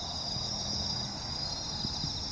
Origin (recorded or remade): recorded